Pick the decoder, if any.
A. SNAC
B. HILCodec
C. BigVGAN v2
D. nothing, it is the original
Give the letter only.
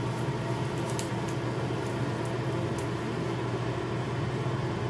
D